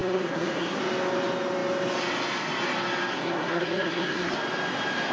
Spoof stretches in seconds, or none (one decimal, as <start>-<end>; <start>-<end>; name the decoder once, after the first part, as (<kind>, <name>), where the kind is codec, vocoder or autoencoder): 0.0-0.8 (codec, SNAC); 3.1-4.3